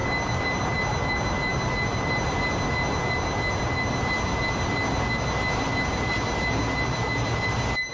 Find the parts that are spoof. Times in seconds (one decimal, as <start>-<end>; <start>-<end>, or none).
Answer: none